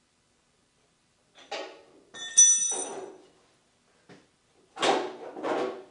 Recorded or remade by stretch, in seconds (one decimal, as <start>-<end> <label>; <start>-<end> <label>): 0.0-5.9 recorded